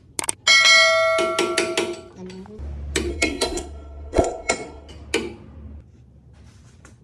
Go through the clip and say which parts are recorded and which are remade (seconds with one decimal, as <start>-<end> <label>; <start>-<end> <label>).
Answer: 0.0-3.1 recorded; 3.1-4.9 remade; 4.9-7.0 recorded